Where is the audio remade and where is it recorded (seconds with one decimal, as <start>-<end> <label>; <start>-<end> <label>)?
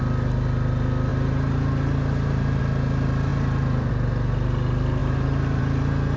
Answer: 0.0-1.1 recorded; 1.1-2.6 remade; 2.6-3.3 recorded; 3.3-3.9 remade; 3.9-5.0 recorded; 5.0-5.6 remade; 5.6-6.2 recorded